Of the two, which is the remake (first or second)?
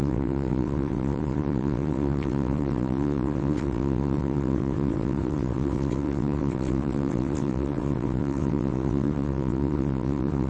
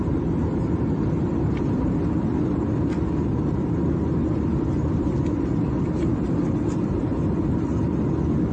first